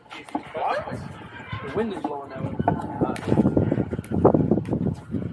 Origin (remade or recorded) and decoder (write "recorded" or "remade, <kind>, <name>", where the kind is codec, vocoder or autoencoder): recorded